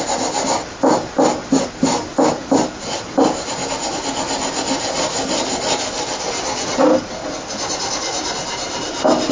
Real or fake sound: real